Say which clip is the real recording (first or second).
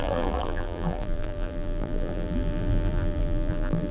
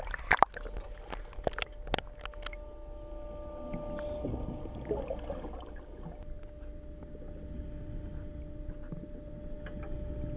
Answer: second